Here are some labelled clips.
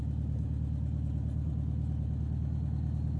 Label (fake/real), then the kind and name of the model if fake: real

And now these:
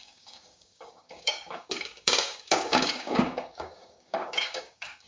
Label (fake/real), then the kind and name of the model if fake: fake, codec, DAC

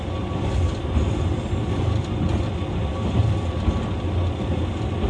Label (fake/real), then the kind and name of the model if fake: real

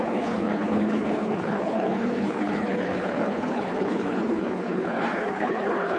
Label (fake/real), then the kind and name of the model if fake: fake, codec, HILCodec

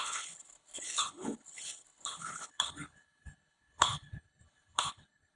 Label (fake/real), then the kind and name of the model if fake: fake, codec, HILCodec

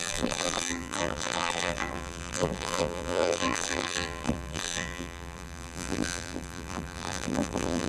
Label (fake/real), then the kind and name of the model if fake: fake, vocoder, BigVGAN v2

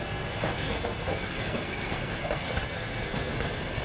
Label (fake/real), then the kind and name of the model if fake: fake, codec, SNAC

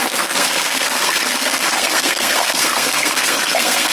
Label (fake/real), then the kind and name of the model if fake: fake, codec, SNAC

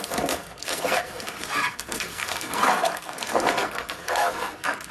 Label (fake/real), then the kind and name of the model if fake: fake, codec, SNAC